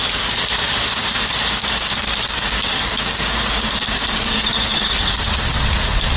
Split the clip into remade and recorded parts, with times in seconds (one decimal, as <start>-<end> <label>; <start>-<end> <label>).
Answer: 0.0-1.6 recorded; 1.6-4.9 remade; 4.9-6.2 recorded